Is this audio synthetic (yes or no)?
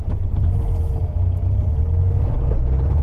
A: no